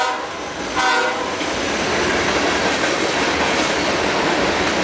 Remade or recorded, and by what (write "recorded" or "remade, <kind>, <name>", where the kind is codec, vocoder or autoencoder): recorded